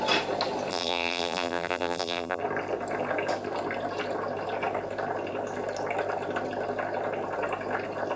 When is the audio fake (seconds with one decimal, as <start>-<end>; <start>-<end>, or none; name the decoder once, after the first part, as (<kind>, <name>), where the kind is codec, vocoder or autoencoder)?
0.7-2.4 (vocoder, BigVGAN v2)